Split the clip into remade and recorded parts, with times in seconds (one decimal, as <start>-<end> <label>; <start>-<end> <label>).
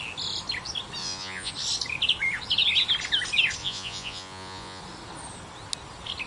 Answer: 0.0-1.0 recorded; 1.0-1.5 remade; 1.5-3.6 recorded; 3.6-4.8 remade; 4.8-6.3 recorded